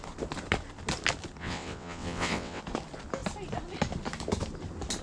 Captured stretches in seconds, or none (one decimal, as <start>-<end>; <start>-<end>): 0.0-1.4; 2.6-5.0